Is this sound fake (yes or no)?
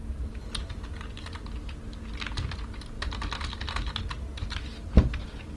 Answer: no